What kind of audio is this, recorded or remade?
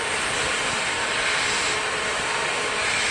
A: recorded